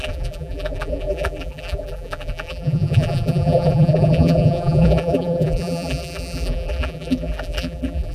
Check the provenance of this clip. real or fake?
fake